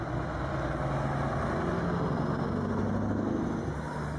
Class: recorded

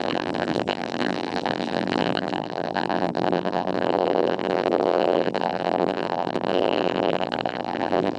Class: remade